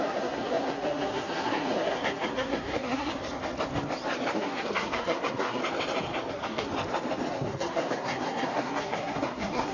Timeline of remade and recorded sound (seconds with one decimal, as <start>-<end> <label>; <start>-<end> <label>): 0.0-3.1 remade; 3.1-4.3 recorded; 4.3-5.6 remade; 5.6-6.3 recorded; 6.3-6.7 remade; 6.7-7.3 recorded; 7.3-9.7 remade